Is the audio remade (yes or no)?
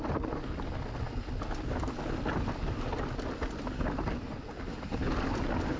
no